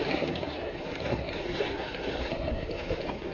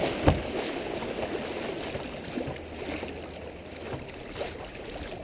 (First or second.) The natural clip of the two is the second